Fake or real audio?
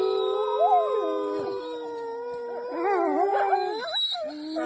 real